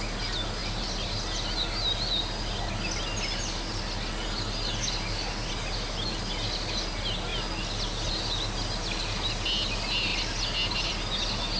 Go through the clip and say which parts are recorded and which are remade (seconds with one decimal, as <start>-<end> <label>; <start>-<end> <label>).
0.0-11.6 recorded